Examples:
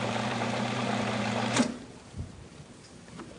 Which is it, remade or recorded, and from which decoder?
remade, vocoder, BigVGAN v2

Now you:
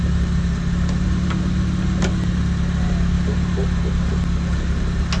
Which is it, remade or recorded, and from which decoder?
recorded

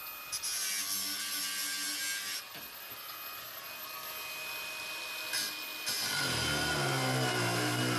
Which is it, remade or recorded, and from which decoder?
recorded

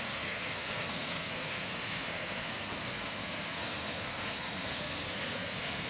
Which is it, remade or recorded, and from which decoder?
remade, codec, SNAC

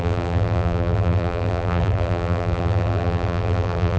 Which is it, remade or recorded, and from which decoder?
remade, vocoder, BigVGAN v2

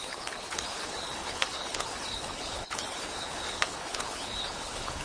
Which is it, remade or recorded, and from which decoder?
remade, codec, HILCodec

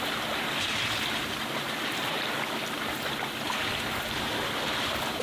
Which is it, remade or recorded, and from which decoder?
recorded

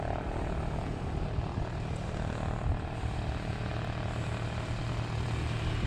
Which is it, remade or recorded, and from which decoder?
recorded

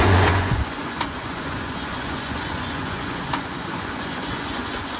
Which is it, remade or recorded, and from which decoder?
remade, vocoder, Vocos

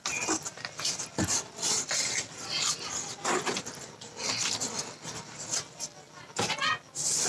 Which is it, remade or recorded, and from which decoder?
recorded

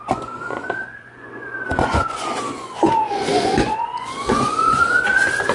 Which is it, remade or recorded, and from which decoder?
remade, vocoder, Vocos